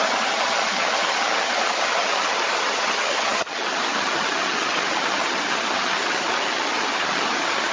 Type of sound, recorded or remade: remade